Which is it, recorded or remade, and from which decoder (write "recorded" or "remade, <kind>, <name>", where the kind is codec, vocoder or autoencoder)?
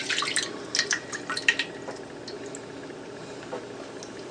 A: recorded